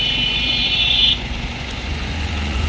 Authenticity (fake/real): fake